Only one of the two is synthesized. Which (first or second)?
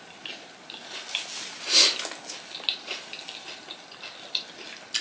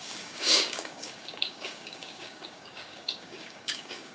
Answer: second